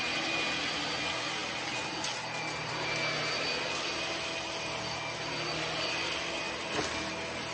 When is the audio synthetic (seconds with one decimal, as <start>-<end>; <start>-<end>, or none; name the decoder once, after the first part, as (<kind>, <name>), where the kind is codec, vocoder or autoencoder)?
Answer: none